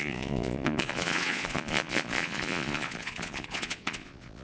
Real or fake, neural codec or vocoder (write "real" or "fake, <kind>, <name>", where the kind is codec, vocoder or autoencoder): fake, vocoder, Vocos